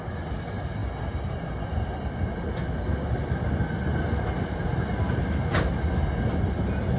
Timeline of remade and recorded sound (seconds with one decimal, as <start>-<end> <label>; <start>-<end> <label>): 0.0-7.0 recorded